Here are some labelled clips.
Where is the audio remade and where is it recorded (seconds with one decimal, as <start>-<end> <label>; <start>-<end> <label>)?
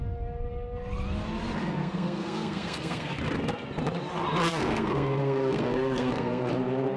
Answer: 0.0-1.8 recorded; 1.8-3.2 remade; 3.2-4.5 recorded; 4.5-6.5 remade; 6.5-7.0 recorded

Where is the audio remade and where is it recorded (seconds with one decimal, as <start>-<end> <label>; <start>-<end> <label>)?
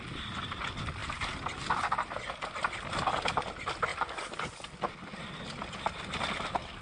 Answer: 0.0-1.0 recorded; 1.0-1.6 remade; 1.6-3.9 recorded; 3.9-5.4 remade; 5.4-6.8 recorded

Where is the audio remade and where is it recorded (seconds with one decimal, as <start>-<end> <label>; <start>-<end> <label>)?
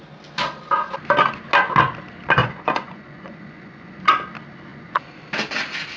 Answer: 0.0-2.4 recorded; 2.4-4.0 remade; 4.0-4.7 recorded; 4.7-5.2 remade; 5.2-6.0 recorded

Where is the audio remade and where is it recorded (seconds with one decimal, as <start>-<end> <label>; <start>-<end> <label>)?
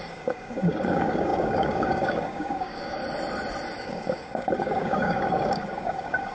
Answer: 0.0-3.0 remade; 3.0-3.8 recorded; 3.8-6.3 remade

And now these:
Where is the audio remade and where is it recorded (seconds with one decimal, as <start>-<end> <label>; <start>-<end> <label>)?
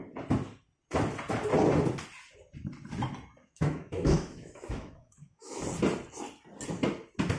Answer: 0.0-3.4 recorded; 3.4-5.6 remade; 5.6-7.4 recorded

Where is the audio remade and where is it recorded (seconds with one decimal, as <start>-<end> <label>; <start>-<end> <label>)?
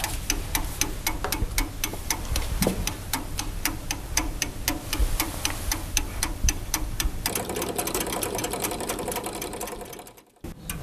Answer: 0.0-1.9 recorded; 1.9-4.5 remade; 4.5-5.0 recorded; 5.0-9.9 remade; 9.9-10.8 recorded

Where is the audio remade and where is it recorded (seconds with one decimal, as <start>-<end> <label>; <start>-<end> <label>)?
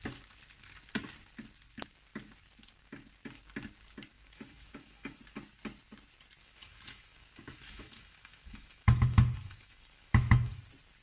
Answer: 0.0-4.1 recorded; 4.1-5.2 remade; 5.2-6.4 recorded; 6.4-10.6 remade; 10.6-11.0 recorded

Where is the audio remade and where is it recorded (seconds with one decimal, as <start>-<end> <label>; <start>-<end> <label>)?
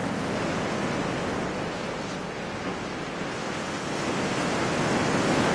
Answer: 0.0-5.5 recorded